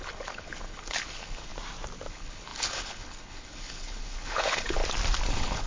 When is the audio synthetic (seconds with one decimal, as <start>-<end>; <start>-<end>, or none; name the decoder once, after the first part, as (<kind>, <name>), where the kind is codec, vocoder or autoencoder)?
0.0-1.5 (codec, HILCodec); 2.1-4.8; 5.3-5.7

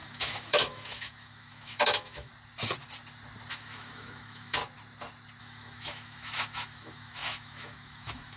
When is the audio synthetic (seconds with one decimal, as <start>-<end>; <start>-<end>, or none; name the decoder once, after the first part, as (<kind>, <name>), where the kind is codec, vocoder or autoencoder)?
0.0-2.3 (autoencoder, DAC-VAE); 3.5-4.6; 5.4-8.4

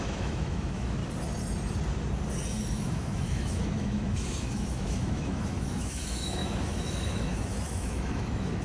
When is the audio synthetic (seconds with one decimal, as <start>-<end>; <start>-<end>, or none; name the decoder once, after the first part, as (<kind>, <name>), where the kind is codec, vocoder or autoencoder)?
0.0-1.0 (autoencoder, DAC-VAE); 2.6-8.6

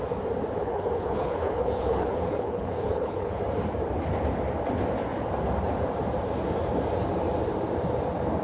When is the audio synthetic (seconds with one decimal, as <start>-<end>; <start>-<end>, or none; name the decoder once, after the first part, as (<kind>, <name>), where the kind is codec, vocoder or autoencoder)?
0.6-3.4 (codec, HILCodec)

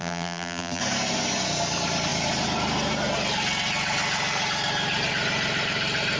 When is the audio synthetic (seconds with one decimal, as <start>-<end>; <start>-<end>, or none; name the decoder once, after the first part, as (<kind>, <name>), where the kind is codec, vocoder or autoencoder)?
0.0-0.8 (vocoder, BigVGAN v2)